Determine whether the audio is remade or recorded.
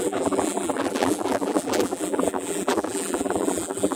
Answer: remade